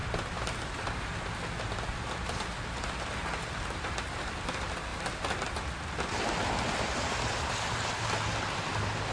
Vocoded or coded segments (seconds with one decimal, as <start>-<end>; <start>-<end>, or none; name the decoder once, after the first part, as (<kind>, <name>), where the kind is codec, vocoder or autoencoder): none

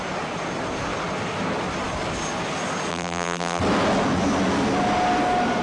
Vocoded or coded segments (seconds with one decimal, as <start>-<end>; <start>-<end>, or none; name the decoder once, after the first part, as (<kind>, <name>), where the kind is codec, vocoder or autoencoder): 2.9-3.6 (vocoder, BigVGAN v2)